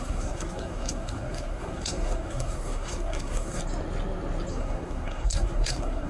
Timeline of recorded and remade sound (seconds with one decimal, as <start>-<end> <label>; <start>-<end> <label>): 0.0-3.6 remade; 3.6-4.5 recorded; 4.5-6.1 remade